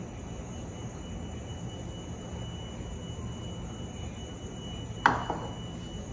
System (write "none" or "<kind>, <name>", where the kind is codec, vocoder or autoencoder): none